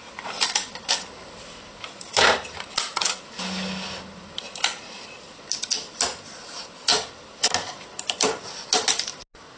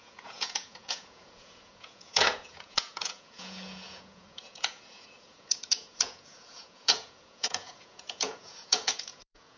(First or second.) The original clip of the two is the first